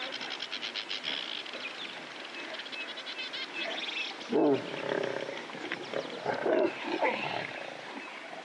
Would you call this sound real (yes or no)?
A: yes